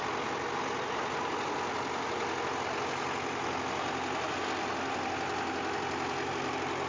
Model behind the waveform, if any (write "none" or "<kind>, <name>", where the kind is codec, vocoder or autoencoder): none